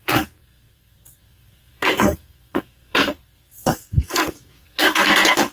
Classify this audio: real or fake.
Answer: fake